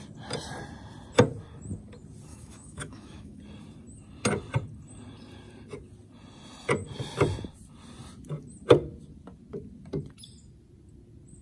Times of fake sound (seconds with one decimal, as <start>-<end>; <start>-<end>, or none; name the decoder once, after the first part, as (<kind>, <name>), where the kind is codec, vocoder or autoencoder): 2.3-3.4 (autoencoder, DAC-VAE)